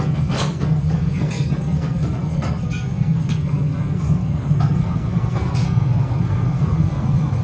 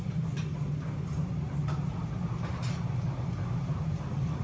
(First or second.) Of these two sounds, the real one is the second